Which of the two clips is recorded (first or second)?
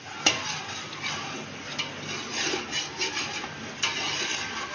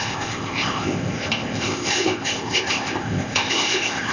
first